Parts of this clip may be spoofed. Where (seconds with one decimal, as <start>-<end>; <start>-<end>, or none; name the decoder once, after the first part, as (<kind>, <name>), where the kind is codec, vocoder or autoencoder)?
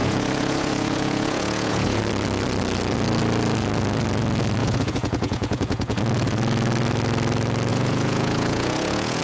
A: 0.0-2.0 (vocoder, Vocos); 4.6-6.0; 7.7-9.2